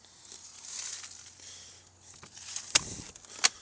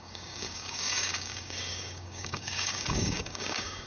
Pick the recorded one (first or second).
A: first